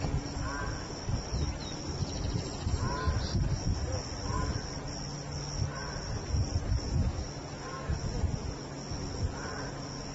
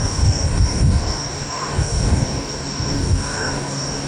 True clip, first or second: first